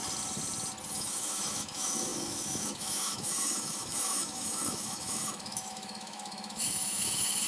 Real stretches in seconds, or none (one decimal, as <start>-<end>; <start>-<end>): 0.0-0.9